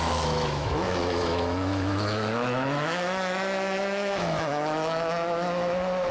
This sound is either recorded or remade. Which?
remade